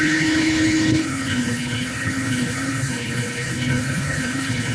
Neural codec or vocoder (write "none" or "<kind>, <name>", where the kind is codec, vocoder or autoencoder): codec, HILCodec